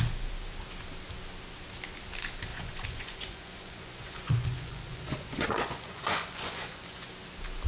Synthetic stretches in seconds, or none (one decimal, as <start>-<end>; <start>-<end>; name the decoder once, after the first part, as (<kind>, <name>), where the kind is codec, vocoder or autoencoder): 2.5-7.1 (vocoder, Vocos)